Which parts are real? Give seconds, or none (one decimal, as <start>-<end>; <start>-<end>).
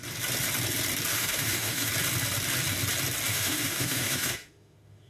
0.0-1.1; 1.9-3.3